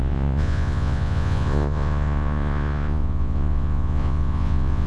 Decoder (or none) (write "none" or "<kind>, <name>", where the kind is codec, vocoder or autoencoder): vocoder, Vocos